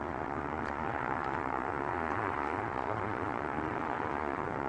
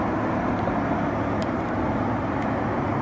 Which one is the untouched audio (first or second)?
second